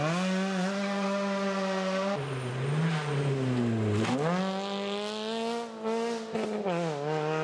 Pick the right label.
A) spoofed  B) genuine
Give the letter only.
B